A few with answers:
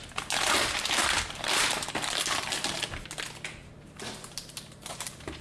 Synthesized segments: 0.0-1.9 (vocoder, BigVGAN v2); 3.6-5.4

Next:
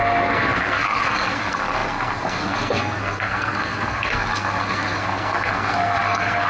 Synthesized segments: 0.0-6.5 (codec, SNAC)

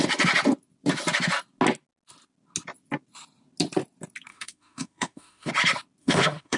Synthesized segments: 4.3-5.5 (autoencoder, DAC-VAE); 6.0-6.6